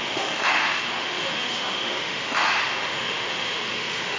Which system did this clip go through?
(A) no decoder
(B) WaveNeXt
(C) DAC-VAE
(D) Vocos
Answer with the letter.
C